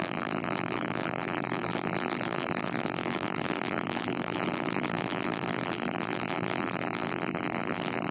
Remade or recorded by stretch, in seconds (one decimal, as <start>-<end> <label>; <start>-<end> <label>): 0.0-8.1 remade